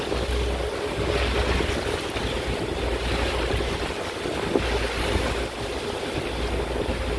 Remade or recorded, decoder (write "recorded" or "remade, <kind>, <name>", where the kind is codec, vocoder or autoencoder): recorded